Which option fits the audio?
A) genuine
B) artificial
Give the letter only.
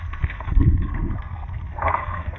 B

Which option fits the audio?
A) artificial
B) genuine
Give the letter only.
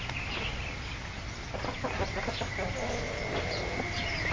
B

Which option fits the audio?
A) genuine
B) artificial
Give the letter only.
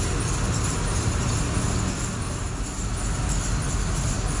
A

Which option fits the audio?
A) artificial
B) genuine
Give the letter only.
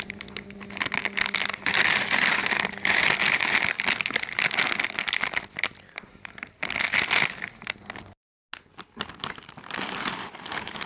B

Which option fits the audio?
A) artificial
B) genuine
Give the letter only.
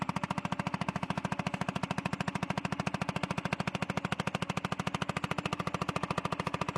B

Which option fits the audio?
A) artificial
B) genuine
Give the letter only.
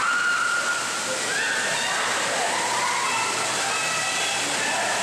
B